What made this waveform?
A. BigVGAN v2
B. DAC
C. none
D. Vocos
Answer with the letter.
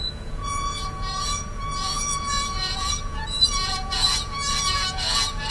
D